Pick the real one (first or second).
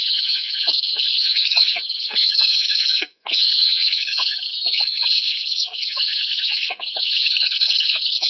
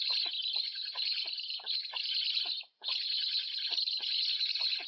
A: second